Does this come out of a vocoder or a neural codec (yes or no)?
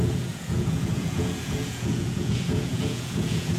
yes